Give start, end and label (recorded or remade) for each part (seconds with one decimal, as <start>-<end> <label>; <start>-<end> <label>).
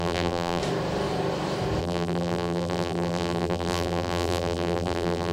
0.0-0.6 remade; 0.6-1.8 recorded; 1.8-5.3 remade